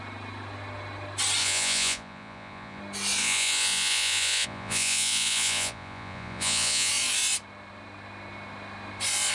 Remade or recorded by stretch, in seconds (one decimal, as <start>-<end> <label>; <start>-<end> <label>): 0.0-1.4 recorded; 1.4-2.8 remade; 2.8-3.2 recorded; 3.2-6.9 remade; 6.9-9.3 recorded